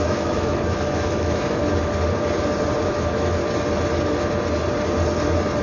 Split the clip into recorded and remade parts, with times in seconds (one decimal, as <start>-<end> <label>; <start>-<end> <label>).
0.0-1.6 remade; 1.6-2.8 recorded; 2.8-3.4 remade; 3.4-5.6 recorded